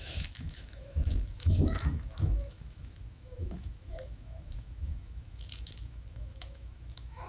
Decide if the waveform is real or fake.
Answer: fake